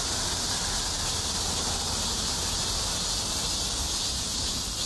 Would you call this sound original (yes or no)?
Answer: yes